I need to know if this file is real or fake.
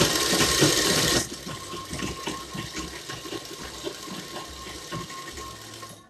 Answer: real